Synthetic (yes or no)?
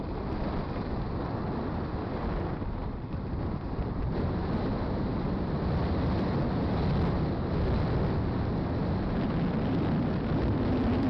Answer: no